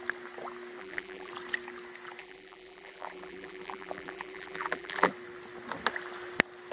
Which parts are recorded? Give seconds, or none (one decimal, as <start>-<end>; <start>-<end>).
0.0-0.8; 1.3-2.2; 5.1-6.7